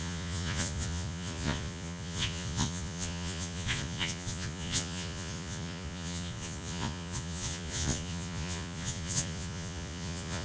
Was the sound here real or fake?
fake